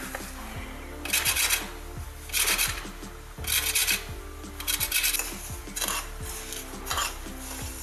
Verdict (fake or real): real